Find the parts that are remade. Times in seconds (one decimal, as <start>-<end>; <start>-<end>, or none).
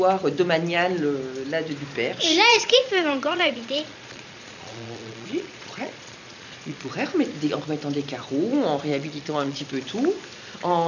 2.5-6.9; 8.9-9.6